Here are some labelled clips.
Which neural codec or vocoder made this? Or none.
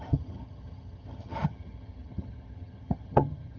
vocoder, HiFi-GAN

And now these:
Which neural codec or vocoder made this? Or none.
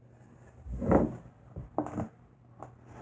none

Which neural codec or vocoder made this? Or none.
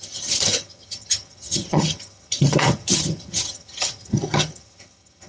vocoder, HiFi-GAN